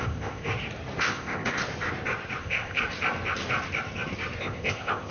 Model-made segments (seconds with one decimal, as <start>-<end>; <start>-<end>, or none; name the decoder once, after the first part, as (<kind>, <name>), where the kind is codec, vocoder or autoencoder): 0.0-0.5 (codec, ZipCodec); 1.0-1.6; 2.4-2.8; 4.4-5.1